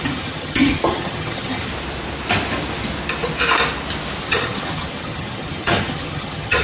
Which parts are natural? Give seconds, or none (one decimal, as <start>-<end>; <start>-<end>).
1.7-4.2

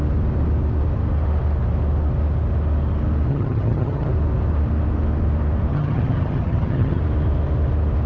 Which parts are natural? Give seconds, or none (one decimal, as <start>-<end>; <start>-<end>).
0.0-3.3; 4.1-5.7; 7.0-8.1

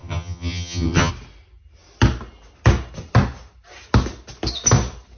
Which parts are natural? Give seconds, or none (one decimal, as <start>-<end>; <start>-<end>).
1.1-5.2

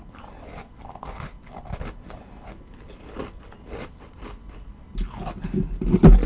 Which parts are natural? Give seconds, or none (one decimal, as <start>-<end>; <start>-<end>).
0.0-6.3

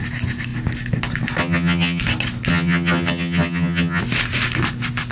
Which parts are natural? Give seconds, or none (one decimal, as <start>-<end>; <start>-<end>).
0.0-1.4; 2.0-2.5; 4.0-5.1

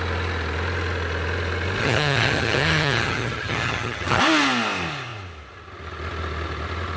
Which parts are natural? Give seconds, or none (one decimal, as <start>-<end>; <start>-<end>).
0.0-1.8; 4.2-7.0

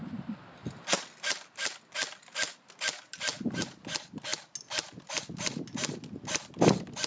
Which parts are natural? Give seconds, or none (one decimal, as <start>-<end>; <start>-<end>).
0.0-7.1

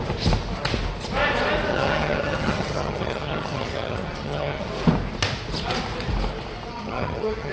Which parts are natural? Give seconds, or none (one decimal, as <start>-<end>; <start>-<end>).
0.0-1.7; 4.7-6.7